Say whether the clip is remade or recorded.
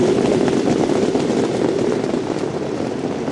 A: recorded